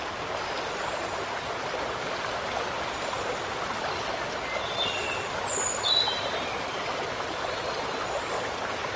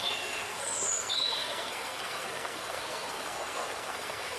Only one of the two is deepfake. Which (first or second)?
second